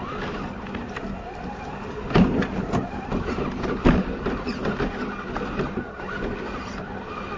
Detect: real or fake real